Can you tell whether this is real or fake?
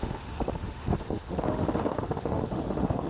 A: fake